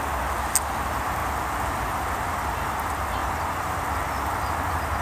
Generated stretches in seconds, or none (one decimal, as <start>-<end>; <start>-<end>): 3.2-3.8